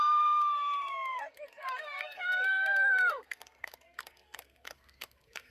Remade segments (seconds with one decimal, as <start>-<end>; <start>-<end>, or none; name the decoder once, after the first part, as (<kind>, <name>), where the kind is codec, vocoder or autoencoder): 0.0-5.5 (codec, SNAC)